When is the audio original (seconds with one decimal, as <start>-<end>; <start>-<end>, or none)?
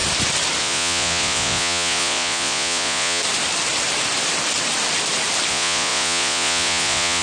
0.0-0.6; 3.2-5.5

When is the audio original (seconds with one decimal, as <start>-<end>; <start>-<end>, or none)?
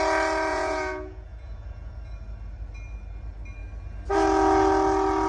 0.0-0.5; 2.0-5.3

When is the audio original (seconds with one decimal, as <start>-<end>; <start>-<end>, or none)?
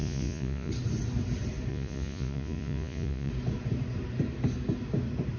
0.7-1.7; 3.3-5.4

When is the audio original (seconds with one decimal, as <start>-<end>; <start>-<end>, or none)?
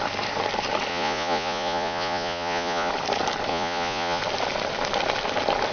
0.0-0.9; 2.9-3.5; 4.2-5.7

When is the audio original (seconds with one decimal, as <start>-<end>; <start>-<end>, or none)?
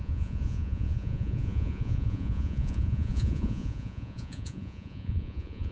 none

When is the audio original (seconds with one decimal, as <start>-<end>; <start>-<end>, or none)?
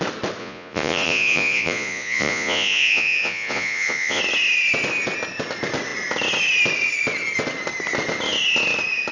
0.0-0.4; 4.2-9.1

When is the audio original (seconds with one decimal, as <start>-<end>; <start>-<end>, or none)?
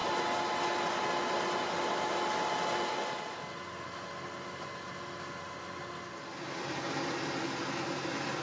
0.0-8.4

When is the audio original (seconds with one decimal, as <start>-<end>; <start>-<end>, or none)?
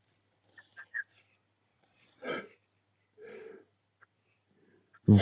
0.0-1.7; 2.4-5.2